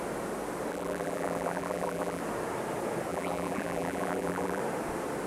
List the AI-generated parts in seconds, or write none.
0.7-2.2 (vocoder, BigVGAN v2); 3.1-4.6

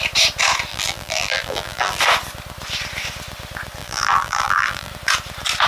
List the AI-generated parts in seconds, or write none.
0.7-2.0 (vocoder, BigVGAN v2); 3.8-4.9